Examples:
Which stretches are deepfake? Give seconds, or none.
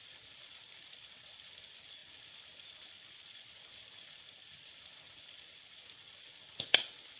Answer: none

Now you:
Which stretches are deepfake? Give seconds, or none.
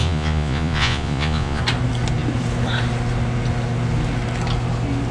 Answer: 0.0-1.6 (vocoder, Vocos)